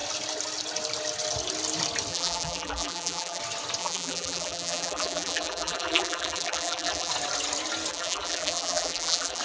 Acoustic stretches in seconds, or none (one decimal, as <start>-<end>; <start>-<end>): 0.0-2.1; 3.4-3.8; 7.1-7.9